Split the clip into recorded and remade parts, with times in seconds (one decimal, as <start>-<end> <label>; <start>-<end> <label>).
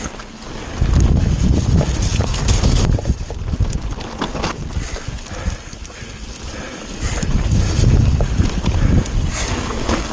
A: 0.0-9.3 recorded; 9.3-10.1 remade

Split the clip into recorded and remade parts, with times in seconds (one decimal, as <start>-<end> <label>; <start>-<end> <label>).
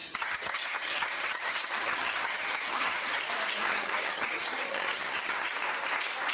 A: 0.0-3.2 remade; 3.2-3.6 recorded; 3.6-5.5 remade; 5.5-6.3 recorded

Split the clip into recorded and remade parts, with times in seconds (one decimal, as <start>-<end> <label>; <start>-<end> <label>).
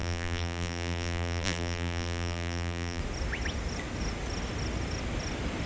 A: 0.0-3.0 remade; 3.0-5.7 recorded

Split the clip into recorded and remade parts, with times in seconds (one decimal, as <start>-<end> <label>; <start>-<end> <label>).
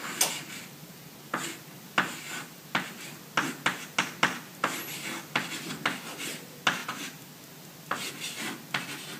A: 0.0-9.2 recorded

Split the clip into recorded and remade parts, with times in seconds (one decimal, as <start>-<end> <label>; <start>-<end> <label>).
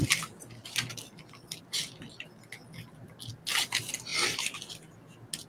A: 0.0-5.5 recorded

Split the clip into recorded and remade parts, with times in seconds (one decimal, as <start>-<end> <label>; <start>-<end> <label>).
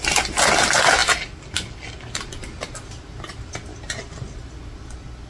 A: 0.0-5.3 recorded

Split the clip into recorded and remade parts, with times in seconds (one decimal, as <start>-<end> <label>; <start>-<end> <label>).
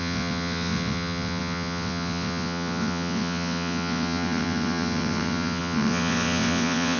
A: 0.0-7.0 remade